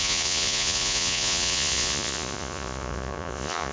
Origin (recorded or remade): remade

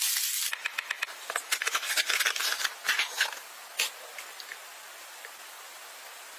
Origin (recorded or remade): recorded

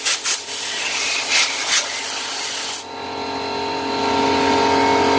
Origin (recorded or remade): recorded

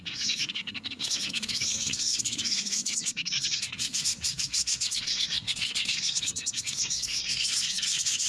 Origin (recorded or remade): remade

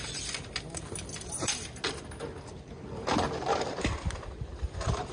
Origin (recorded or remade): recorded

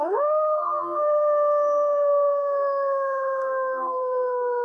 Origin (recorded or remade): remade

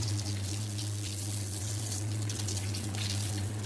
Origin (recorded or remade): remade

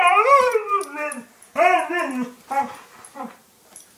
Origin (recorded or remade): remade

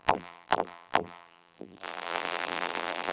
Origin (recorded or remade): remade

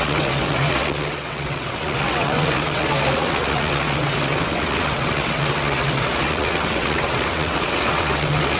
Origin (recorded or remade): remade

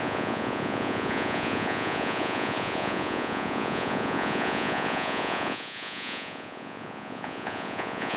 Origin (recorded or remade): remade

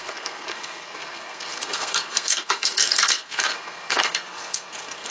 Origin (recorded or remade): remade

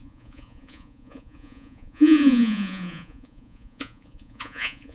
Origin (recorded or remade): remade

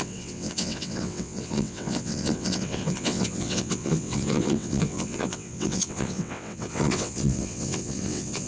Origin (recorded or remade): remade